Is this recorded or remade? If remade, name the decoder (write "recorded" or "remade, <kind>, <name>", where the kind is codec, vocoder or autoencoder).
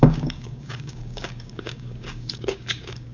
remade, codec, DAC